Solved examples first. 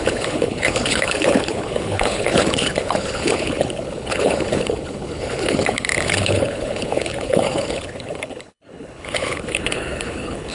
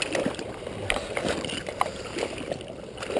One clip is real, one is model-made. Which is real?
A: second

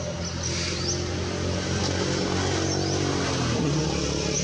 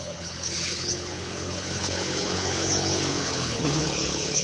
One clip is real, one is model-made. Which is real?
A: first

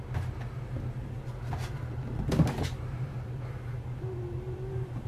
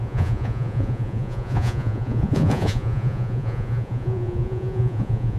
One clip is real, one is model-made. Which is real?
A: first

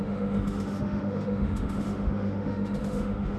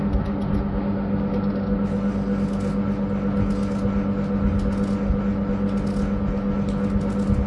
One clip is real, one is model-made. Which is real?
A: second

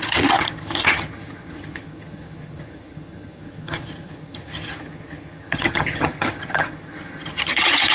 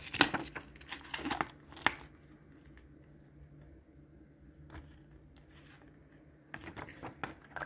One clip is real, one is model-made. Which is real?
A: second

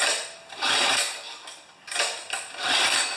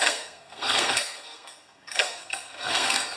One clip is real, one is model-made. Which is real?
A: first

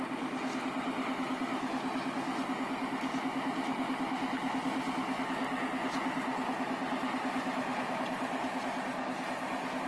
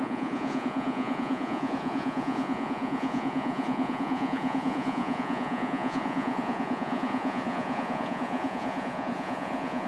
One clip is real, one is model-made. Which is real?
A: first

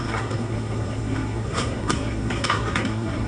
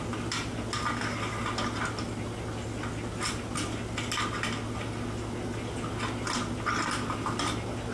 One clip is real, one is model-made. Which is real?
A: second